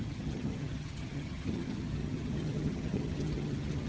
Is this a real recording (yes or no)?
no